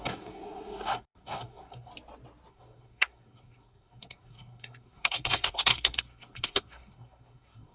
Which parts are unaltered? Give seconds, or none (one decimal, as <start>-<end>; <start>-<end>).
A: 1.9-2.5